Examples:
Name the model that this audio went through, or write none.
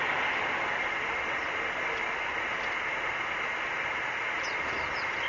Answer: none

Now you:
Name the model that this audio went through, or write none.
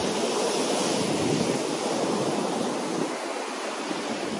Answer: none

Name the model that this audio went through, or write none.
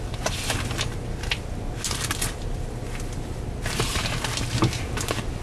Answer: none